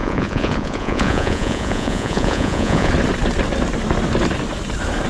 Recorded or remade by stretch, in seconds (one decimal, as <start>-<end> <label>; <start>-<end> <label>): 0.0-2.9 remade; 2.9-5.1 recorded